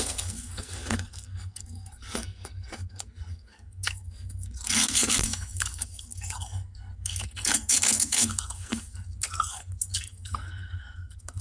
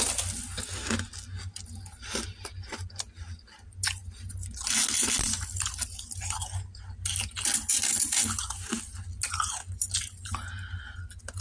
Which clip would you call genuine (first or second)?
second